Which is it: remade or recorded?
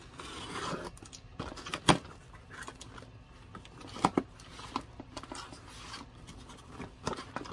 recorded